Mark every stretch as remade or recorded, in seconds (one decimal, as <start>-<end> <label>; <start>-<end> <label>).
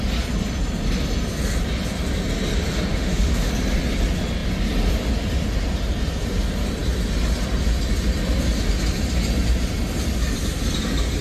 0.0-2.9 recorded; 2.9-3.5 remade; 3.5-11.2 recorded